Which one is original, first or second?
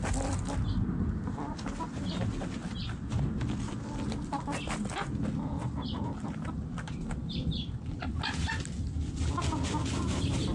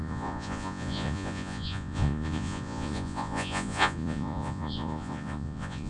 first